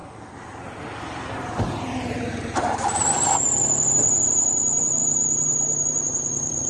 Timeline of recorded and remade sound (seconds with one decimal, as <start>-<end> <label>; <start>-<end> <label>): 0.0-1.0 recorded; 1.0-3.0 remade; 3.0-4.2 recorded; 4.2-5.0 remade; 5.0-5.8 recorded; 5.8-6.7 remade